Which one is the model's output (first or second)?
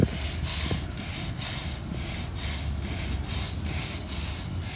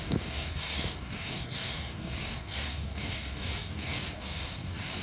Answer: second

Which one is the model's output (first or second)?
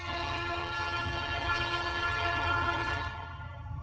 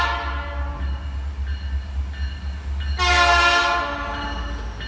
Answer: first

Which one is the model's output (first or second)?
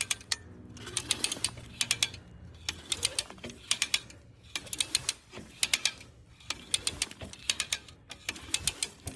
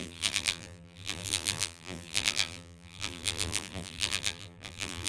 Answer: second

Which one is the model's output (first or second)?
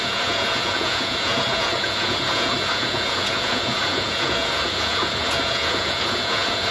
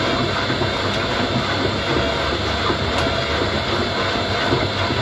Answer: first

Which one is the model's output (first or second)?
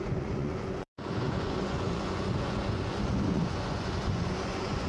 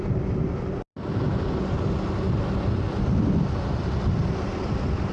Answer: first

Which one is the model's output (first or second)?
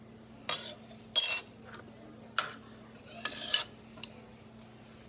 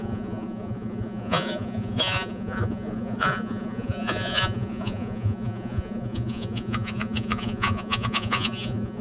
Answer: second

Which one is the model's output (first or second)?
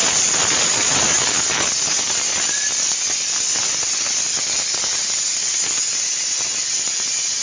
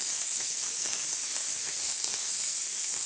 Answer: second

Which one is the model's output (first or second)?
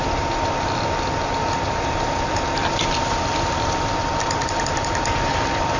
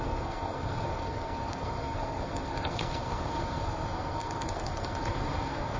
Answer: second